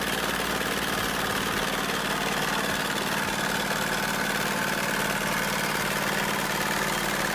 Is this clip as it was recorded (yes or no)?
yes